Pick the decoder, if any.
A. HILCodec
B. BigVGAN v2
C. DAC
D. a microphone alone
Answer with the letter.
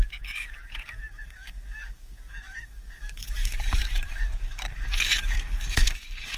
C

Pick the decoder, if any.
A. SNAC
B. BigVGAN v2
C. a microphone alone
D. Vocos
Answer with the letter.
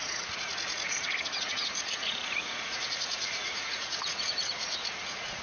D